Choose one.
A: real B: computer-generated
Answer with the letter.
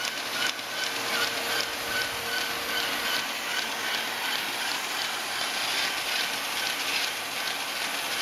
A